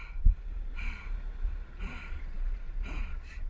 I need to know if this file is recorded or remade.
remade